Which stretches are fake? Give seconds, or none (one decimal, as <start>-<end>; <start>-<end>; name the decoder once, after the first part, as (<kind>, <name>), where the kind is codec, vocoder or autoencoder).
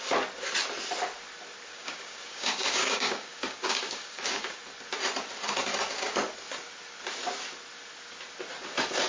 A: 1.7-4.6 (codec, DAC)